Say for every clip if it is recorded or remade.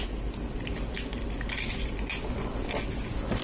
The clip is recorded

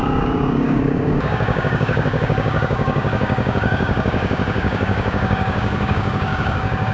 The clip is remade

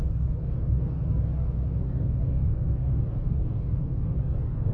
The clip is remade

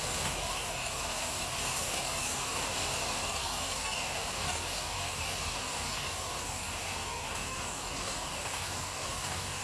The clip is remade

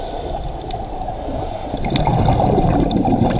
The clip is recorded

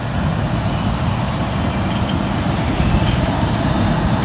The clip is recorded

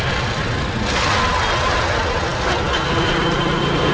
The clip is recorded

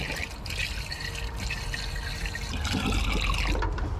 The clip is recorded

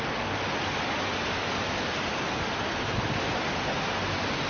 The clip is recorded